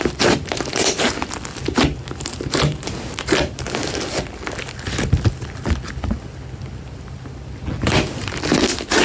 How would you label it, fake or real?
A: real